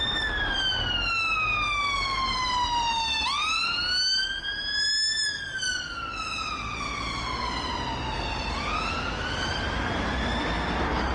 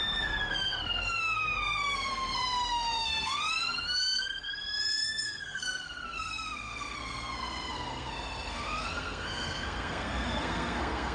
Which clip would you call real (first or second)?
first